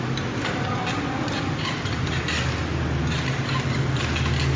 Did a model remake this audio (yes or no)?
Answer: no